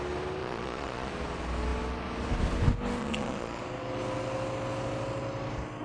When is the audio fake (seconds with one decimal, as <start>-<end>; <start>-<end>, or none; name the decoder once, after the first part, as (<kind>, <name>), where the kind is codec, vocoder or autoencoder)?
0.4-1.1 (vocoder, Vocos); 3.0-3.6